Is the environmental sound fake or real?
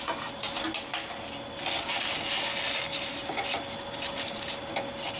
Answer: real